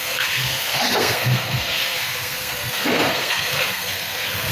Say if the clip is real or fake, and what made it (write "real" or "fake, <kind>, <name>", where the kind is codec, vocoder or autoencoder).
fake, codec, SNAC